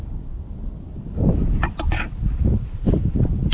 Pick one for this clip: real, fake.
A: real